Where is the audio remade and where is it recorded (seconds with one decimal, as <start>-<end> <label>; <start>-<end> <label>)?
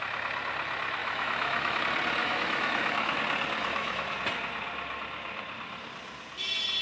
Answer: 0.0-1.0 recorded; 1.0-1.8 remade; 1.8-2.2 recorded; 2.2-3.2 remade; 3.2-3.6 recorded; 3.6-4.2 remade; 4.2-6.8 recorded